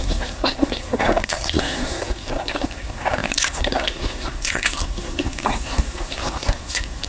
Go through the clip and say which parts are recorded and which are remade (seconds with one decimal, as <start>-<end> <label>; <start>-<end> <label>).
0.0-7.1 remade